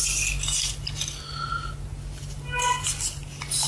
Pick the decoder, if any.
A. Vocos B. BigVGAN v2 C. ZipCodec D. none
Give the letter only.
D